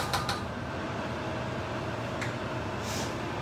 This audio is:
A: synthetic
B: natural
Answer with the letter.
B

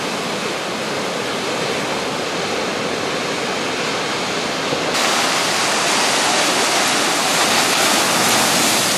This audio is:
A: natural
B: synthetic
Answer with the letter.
A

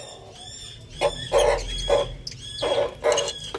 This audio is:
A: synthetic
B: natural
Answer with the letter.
B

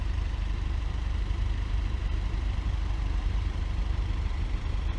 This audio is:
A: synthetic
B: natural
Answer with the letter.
A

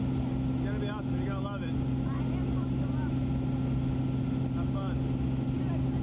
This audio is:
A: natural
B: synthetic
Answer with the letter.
A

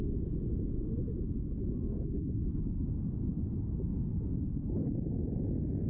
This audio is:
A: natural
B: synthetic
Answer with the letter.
A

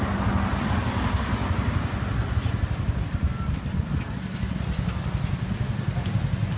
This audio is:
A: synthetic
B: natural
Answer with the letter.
B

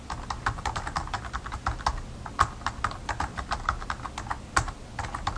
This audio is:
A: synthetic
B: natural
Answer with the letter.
B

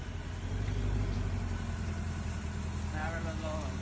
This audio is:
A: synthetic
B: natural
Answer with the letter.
A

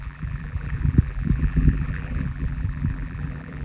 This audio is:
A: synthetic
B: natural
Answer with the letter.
A